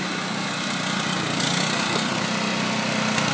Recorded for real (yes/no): yes